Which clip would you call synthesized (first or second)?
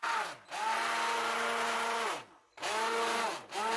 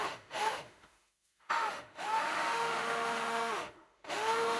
second